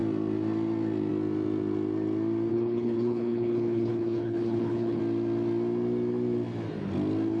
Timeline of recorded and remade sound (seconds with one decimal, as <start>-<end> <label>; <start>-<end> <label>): 0.0-2.5 recorded; 2.5-5.0 remade; 5.0-7.4 recorded